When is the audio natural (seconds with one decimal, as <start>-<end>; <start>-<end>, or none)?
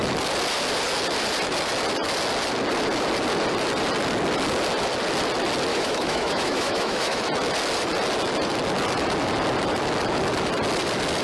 0.0-5.7; 7.2-11.2